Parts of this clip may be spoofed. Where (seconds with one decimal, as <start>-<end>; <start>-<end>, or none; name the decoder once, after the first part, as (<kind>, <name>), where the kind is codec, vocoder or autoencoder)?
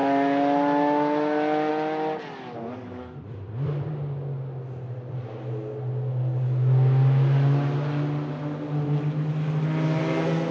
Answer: none